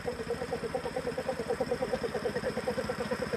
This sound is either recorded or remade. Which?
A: remade